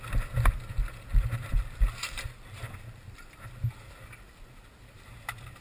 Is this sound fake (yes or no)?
no